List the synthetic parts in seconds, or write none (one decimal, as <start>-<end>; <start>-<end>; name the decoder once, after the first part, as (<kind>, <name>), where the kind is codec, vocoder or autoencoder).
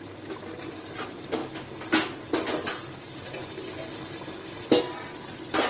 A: none